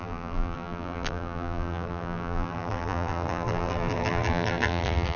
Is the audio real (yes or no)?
no